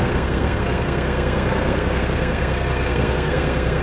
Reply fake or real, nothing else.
fake